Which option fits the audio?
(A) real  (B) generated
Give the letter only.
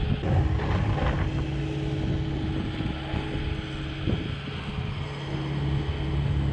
A